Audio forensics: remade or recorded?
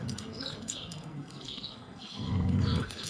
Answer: remade